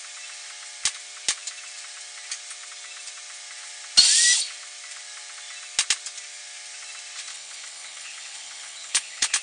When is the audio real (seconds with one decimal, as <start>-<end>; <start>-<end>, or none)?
0.0-7.3